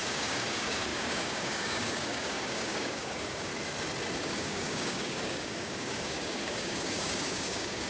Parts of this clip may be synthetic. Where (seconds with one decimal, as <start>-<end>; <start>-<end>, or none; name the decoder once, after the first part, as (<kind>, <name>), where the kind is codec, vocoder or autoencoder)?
0.0-3.5 (codec, DAC); 4.2-7.9